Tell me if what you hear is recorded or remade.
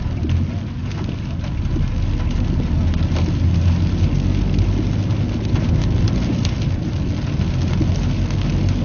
recorded